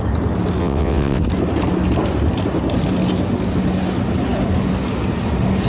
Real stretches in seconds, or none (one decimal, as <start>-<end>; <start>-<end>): 0.0-0.6; 1.2-5.7